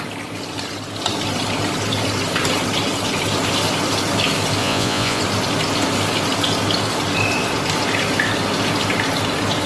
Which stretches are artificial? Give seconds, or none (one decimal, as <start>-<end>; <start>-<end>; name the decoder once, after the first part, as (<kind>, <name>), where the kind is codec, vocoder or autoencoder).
4.6-5.2 (vocoder, Vocos)